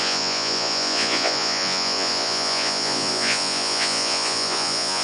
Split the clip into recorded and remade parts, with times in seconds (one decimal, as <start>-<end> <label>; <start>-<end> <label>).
0.0-5.0 remade